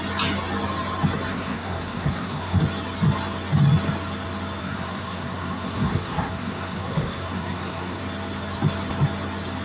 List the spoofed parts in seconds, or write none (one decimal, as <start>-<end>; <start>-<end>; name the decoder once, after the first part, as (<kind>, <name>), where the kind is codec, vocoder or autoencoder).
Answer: 1.3-2.6 (codec, SNAC); 4.6-8.0